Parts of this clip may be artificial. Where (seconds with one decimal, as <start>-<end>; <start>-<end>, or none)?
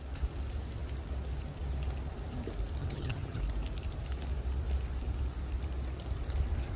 2.8-3.4